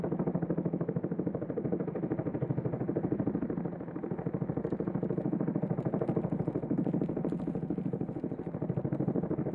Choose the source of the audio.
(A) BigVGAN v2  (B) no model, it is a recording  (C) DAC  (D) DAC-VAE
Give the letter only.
B